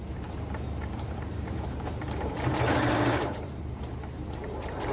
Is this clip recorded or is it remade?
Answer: remade